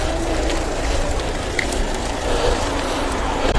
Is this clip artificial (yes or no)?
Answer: yes